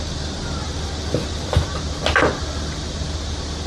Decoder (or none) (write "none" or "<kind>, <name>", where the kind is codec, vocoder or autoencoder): none